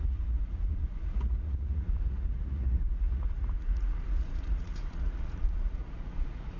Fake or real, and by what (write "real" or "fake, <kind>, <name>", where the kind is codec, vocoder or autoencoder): fake, vocoder, Vocos